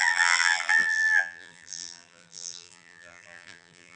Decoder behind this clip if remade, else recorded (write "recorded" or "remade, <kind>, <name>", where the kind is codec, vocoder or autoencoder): remade, vocoder, BigVGAN v2